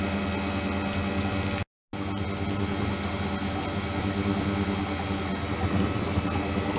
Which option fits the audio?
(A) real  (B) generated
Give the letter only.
A